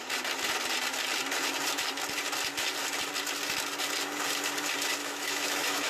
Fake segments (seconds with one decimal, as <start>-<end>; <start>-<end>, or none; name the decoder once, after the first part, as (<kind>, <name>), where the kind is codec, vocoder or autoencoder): 5.0-5.9 (autoencoder, DAC-VAE)